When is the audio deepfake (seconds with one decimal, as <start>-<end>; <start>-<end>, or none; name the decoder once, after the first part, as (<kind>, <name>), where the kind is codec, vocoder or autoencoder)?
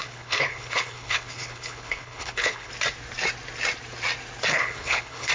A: 0.0-2.7 (codec, HILCodec); 4.5-5.3